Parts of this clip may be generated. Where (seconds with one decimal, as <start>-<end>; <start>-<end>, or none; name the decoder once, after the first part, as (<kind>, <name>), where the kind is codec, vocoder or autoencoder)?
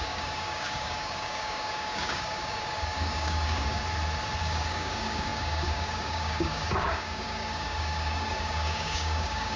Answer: 0.0-3.8 (codec, DAC); 4.4-9.6